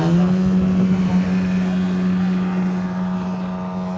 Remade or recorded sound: recorded